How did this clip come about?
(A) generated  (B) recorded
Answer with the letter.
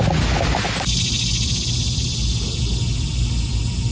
B